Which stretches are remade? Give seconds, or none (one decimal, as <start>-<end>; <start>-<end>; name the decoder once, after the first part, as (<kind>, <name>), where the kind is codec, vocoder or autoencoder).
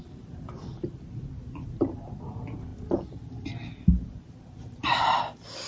0.0-4.9 (vocoder, BigVGAN v2)